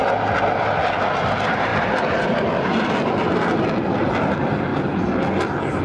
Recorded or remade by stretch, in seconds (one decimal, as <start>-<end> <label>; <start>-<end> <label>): 0.0-5.8 recorded